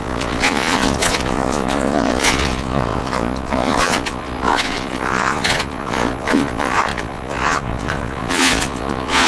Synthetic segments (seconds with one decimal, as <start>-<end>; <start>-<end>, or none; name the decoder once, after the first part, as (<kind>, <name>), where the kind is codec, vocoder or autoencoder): 0.0-9.3 (vocoder, Vocos)